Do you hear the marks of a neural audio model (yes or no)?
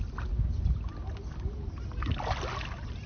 no